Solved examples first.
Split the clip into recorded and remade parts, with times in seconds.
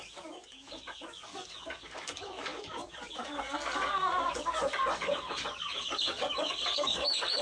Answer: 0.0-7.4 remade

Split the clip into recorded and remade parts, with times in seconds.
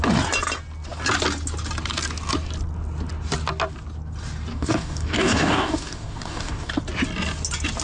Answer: 0.0-4.5 recorded; 4.5-6.7 remade; 6.7-7.8 recorded